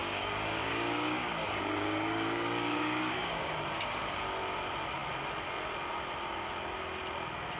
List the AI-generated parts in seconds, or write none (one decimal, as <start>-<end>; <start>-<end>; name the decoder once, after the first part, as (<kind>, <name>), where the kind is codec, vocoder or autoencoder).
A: 0.0-4.0 (codec, DAC)